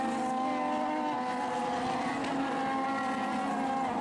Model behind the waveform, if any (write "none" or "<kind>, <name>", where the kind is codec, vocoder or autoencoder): none